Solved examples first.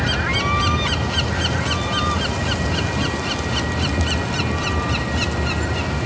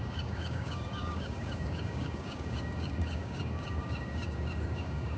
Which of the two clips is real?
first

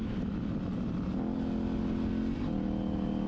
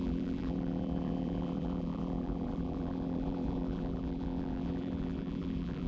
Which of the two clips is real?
first